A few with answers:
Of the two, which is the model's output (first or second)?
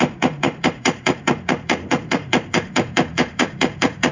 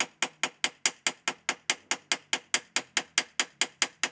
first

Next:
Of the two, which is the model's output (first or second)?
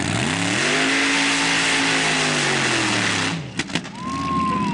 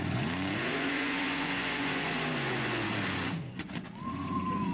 second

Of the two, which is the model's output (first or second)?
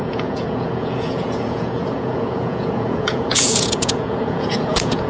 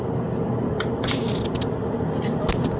first